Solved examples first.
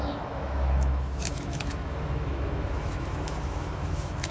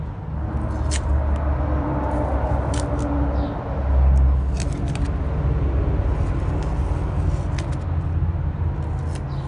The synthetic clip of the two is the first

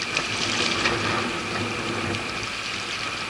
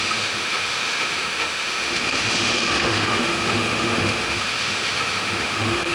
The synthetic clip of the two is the second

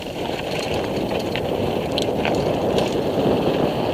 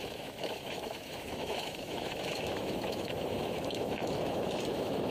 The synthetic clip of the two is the second